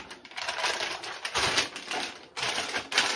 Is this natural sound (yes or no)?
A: yes